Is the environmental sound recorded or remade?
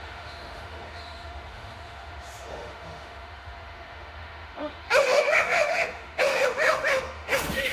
remade